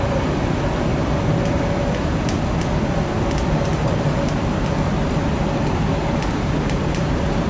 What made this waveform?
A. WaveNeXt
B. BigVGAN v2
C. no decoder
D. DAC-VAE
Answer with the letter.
C